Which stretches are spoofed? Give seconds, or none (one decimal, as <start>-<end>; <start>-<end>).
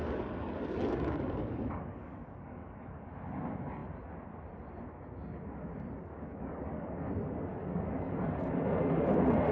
0.0-3.1; 6.1-7.1; 7.5-8.6